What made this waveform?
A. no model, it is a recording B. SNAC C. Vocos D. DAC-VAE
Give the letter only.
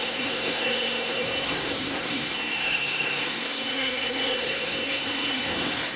B